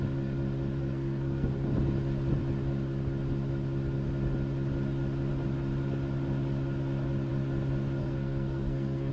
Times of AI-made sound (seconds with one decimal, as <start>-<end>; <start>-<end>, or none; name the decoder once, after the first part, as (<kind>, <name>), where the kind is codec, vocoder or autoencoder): 0.8-1.5 (codec, SNAC); 8.0-9.1